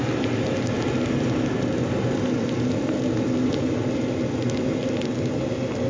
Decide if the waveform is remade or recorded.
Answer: recorded